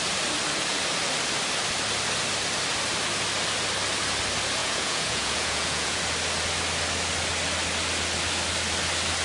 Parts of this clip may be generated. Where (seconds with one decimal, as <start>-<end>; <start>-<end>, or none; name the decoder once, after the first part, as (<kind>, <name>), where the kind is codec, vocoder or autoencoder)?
4.6-6.0 (vocoder, Vocos)